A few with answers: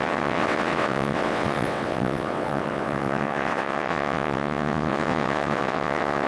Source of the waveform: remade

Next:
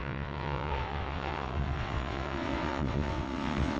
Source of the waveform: remade